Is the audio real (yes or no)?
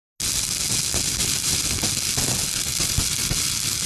yes